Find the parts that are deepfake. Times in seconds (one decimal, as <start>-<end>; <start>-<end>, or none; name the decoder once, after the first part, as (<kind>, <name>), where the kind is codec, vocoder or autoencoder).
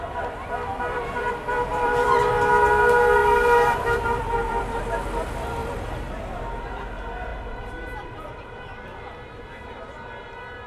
0.7-2.3 (vocoder, BigVGAN v2); 3.2-4.8; 5.6-6.8; 7.3-9.8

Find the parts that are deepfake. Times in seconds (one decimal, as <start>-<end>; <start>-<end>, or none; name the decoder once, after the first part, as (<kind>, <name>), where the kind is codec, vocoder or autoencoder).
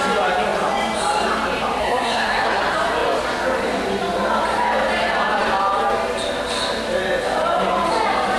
1.8-2.6 (codec, SNAC)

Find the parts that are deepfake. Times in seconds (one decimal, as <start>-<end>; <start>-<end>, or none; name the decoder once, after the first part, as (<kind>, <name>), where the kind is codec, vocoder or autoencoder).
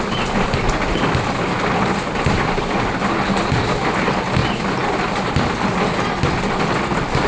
none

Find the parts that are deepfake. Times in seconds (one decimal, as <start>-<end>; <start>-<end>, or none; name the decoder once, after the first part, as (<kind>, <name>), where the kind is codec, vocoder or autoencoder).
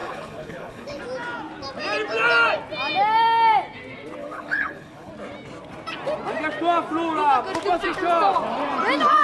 0.0-1.0 (codec, HILCodec); 4.2-5.1